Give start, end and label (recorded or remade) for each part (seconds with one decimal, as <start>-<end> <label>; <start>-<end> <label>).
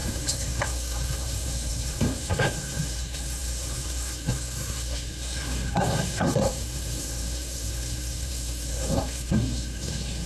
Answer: 0.0-10.3 remade